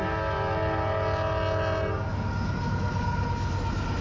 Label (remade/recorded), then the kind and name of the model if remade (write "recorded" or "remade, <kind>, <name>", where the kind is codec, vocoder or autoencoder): recorded